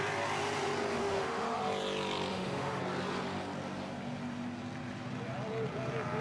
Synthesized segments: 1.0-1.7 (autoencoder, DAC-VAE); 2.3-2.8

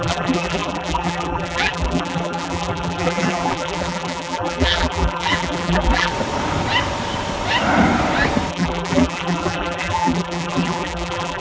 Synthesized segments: 0.0-6.1 (vocoder, BigVGAN v2); 8.5-11.4

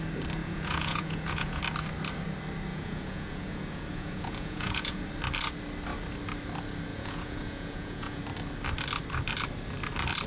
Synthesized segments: 0.4-1.6 (vocoder, Vocos); 2.7-5.0; 6.9-8.2

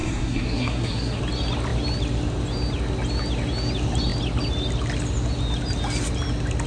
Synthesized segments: 0.0-1.2 (codec, SNAC)

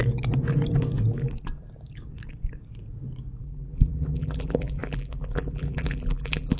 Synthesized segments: 3.4-6.6 (vocoder, BigVGAN v2)

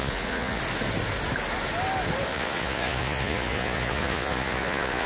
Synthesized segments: 0.0-0.6 (vocoder, Vocos); 2.3-5.1